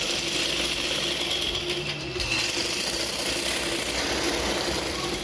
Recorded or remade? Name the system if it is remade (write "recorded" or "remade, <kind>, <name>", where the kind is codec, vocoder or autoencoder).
recorded